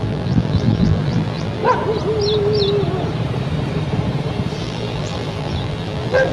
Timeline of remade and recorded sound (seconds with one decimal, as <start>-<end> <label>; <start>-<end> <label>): 0.0-1.6 remade; 1.6-4.6 recorded; 4.6-6.3 remade